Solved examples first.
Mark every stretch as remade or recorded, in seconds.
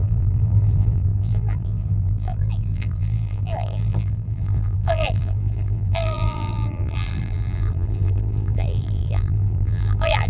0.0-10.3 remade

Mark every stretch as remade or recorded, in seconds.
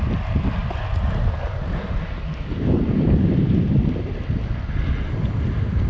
0.0-5.9 recorded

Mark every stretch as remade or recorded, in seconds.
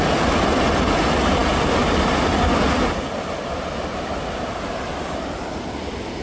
0.0-3.4 recorded; 3.4-4.8 remade; 4.8-6.2 recorded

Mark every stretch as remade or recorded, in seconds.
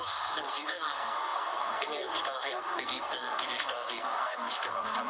0.0-5.1 remade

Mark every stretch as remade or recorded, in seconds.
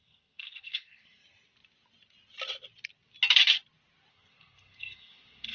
0.0-1.2 remade; 1.2-4.1 recorded; 4.1-5.5 remade